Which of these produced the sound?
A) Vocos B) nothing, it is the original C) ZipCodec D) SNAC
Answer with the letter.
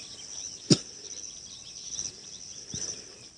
B